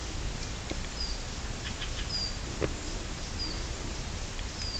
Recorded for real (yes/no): yes